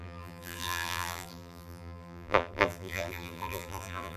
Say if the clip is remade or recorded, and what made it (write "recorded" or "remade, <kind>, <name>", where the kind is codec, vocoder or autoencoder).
remade, vocoder, BigVGAN v2